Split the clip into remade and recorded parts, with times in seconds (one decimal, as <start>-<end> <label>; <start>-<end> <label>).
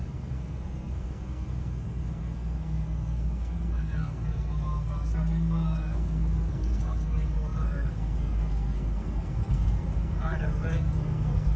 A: 0.0-11.6 remade